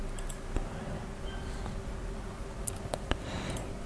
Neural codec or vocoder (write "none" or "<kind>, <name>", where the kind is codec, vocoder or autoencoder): none